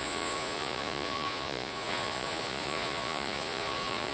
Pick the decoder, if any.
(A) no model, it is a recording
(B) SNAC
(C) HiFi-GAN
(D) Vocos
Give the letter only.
D